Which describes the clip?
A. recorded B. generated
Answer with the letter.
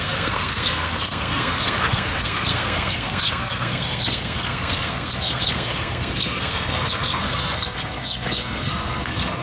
B